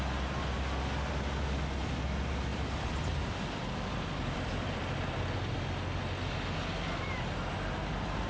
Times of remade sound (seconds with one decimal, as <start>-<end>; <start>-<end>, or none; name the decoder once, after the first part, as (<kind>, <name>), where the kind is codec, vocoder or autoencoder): 2.5-5.2 (vocoder, BigVGAN v2)